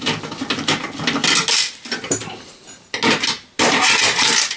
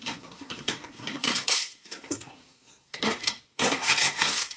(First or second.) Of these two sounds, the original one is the first